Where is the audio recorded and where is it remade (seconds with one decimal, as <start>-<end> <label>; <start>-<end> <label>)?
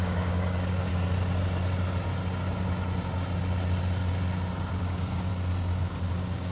0.0-0.9 remade; 0.9-4.8 recorded; 4.8-5.3 remade; 5.3-6.1 recorded; 6.1-6.5 remade